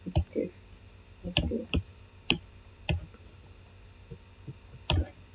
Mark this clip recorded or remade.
recorded